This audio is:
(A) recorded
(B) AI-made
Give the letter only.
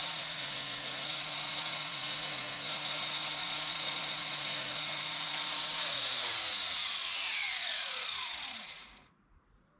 B